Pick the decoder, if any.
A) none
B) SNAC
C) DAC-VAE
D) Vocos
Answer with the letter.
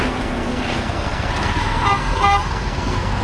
B